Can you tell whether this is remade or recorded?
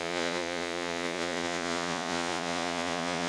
remade